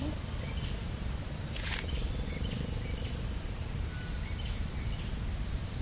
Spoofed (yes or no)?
no